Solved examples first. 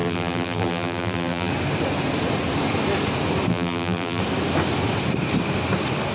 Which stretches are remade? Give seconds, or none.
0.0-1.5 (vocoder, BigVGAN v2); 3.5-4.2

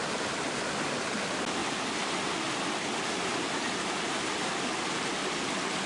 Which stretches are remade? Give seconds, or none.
none